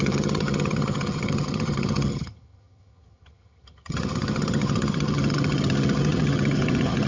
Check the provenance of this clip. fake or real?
fake